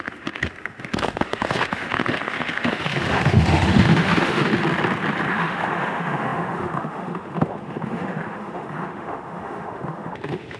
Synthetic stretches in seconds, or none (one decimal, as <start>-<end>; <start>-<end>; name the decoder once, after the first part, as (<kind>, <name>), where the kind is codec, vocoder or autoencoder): 0.0-4.5 (autoencoder, DAC-VAE); 5.3-10.6